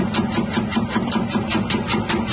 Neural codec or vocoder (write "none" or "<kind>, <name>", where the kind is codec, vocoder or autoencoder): none